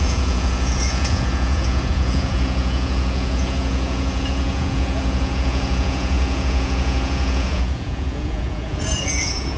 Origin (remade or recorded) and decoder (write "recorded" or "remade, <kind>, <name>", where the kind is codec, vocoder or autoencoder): remade, vocoder, Vocos